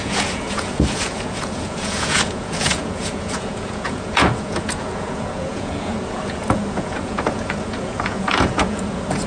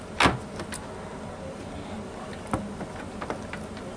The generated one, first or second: first